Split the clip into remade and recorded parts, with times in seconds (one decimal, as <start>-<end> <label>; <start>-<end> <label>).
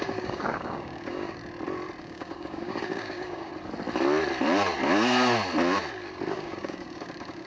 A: 0.0-1.4 remade; 1.4-2.0 recorded; 2.0-3.5 remade; 3.5-6.3 recorded; 6.3-7.5 remade